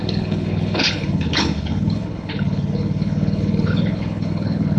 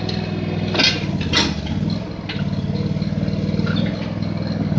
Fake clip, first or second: first